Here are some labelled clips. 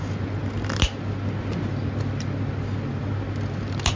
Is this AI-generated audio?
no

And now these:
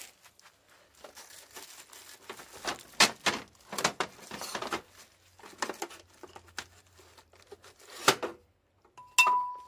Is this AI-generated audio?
no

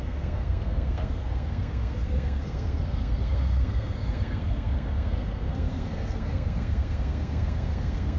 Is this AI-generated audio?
yes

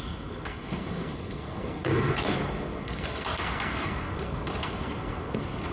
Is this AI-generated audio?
yes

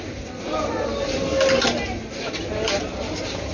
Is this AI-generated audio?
no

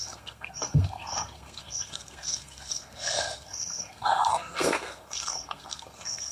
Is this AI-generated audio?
yes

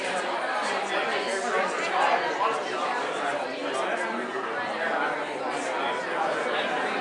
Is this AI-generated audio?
no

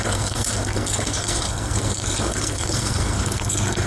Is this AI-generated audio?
yes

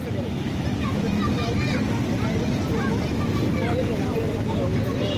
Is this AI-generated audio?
no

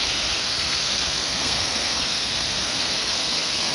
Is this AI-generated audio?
yes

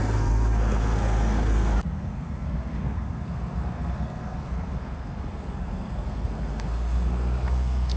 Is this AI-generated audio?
yes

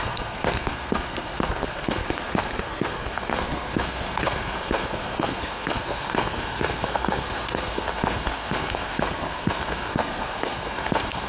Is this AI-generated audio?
yes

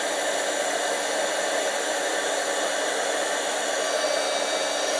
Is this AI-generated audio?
no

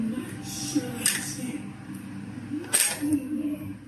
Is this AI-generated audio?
no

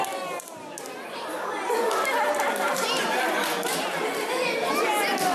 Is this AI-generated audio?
no